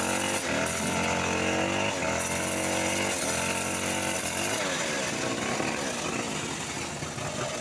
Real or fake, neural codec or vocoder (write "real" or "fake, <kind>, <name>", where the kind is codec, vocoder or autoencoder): real